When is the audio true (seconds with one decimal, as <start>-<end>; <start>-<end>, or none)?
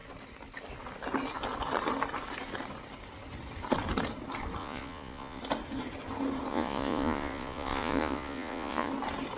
0.0-4.6; 5.4-6.5; 8.9-9.4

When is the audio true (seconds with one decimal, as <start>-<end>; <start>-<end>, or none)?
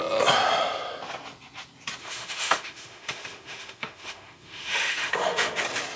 0.0-2.0; 5.6-6.0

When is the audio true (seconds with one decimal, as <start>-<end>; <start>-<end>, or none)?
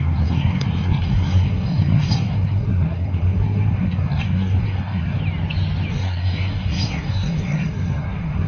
5.2-5.9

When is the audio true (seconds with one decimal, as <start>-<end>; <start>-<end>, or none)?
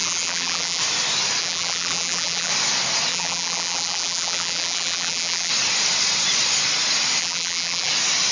0.8-1.4; 2.5-3.1; 5.5-7.2; 7.9-8.3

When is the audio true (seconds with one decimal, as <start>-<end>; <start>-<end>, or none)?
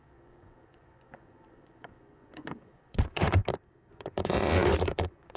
3.4-3.9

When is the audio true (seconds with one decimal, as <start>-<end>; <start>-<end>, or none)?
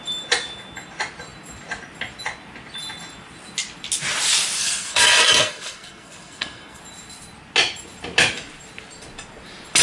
0.0-4.6; 6.8-9.8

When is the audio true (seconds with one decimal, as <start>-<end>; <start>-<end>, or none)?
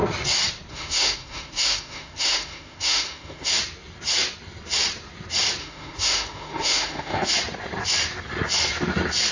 0.0-0.7; 3.5-5.6; 7.3-9.3